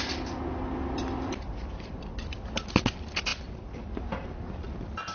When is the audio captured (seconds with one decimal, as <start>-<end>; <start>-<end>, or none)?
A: 0.0-5.1